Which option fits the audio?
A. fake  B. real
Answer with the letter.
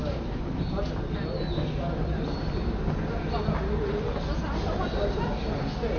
B